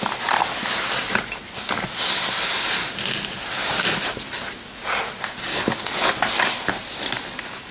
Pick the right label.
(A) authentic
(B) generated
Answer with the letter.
A